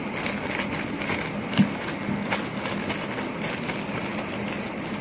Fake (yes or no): no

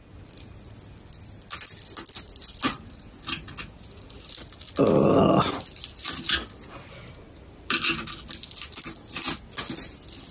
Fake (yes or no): no